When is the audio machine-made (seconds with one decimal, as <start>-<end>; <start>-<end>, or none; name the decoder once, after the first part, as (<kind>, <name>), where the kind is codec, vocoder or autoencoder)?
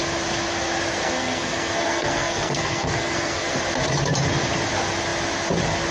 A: 0.9-3.6 (codec, SNAC)